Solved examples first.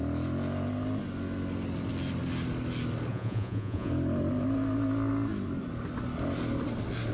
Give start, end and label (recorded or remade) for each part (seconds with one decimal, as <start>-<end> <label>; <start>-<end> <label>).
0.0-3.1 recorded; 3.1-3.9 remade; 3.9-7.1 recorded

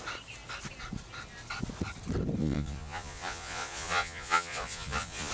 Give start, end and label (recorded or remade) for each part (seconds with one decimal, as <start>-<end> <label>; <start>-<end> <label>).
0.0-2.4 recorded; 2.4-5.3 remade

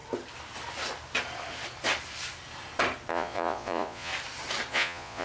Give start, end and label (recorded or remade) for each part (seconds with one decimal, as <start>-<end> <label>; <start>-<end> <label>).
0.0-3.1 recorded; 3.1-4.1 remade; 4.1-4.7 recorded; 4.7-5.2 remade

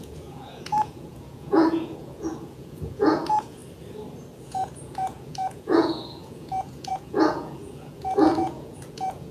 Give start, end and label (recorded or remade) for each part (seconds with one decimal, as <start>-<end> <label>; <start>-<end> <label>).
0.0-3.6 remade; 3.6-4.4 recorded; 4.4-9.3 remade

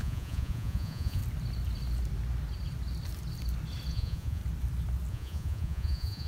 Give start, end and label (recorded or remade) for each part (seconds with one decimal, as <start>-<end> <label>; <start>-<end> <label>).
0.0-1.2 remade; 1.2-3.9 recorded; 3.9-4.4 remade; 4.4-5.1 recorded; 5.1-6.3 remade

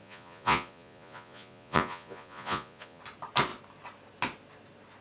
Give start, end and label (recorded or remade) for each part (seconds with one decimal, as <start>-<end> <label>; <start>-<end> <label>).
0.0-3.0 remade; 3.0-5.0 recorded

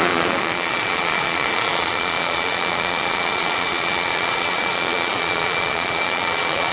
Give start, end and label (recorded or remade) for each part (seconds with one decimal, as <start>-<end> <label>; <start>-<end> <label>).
0.0-6.7 remade